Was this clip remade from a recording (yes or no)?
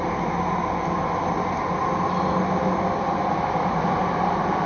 no